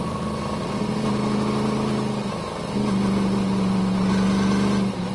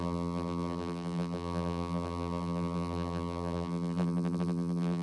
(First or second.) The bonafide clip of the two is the first